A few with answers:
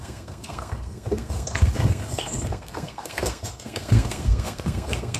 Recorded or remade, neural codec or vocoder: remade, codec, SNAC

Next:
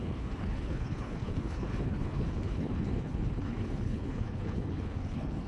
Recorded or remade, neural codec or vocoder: remade, codec, HILCodec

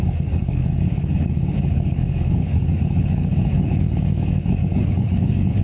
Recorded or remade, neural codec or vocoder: remade, codec, DAC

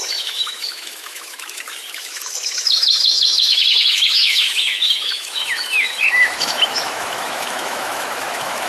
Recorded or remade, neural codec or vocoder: remade, autoencoder, DAC-VAE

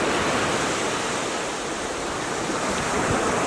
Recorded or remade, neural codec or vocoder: recorded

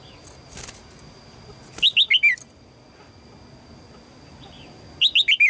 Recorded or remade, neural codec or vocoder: recorded